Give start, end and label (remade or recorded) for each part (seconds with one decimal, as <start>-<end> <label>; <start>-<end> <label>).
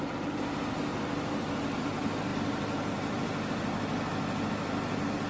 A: 0.0-5.3 recorded